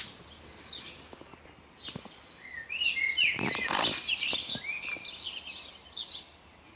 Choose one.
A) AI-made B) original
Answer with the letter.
B